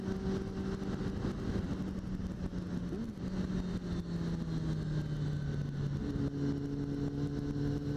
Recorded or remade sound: recorded